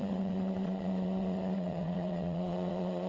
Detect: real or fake fake